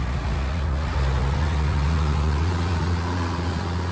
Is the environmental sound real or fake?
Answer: fake